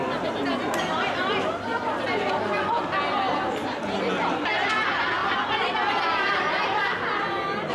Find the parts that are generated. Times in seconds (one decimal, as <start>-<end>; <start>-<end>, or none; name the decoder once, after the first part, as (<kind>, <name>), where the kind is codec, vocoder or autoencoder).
1.7-2.5 (vocoder, BigVGAN v2); 3.6-4.1